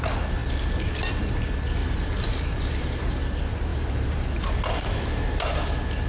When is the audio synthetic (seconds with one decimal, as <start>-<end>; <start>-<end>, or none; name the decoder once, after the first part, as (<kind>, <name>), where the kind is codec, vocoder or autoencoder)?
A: 1.8-3.0 (vocoder, BigVGAN v2); 3.7-4.5

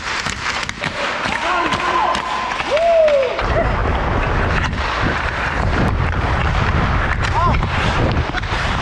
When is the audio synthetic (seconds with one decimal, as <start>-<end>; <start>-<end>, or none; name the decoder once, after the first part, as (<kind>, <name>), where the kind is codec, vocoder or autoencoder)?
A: 0.0-2.0 (vocoder, BigVGAN v2); 3.0-3.8; 5.0-6.4; 7.9-8.8

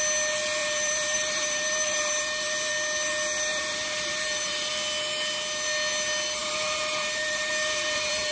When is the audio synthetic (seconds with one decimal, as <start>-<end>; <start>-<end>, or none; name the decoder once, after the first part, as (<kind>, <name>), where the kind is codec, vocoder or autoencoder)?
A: 0.6-2.7 (vocoder, BigVGAN v2); 3.5-4.7; 6.4-8.3

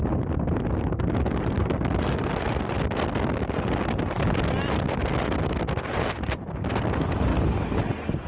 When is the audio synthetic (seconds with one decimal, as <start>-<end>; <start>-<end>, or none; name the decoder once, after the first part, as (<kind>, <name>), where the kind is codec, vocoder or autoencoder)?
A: none

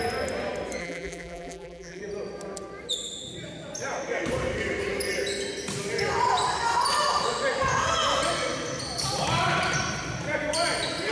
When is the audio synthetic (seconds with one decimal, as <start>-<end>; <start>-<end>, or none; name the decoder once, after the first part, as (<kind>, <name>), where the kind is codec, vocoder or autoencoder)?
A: 0.8-2.0 (vocoder, BigVGAN v2)

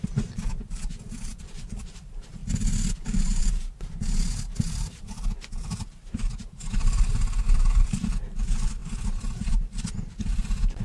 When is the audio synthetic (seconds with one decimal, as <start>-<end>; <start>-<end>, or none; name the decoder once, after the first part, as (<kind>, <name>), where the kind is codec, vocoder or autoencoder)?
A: 0.0-2.4 (vocoder, BigVGAN v2); 3.0-10.8

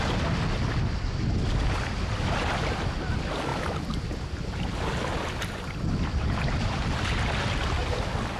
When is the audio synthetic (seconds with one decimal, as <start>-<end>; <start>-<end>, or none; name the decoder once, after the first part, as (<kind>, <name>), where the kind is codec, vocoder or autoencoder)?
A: none

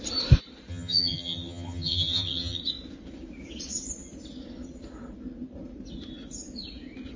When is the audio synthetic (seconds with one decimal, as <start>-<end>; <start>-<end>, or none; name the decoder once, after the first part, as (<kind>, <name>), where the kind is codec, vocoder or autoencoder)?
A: 0.7-2.6 (vocoder, HiFi-GAN)